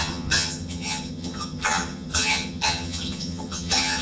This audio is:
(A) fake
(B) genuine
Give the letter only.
A